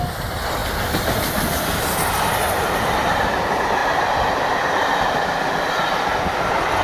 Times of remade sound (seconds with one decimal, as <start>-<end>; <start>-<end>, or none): none